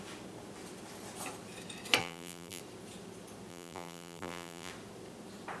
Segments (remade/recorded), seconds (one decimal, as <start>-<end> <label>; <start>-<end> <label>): 0.0-2.0 recorded; 2.0-2.6 remade; 2.6-3.5 recorded; 3.5-4.7 remade; 4.7-5.6 recorded